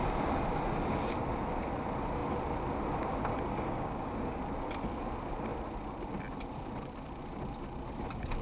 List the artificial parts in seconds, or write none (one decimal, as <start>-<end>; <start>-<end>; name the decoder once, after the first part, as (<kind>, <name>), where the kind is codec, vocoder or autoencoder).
3.5-4.4 (codec, DAC)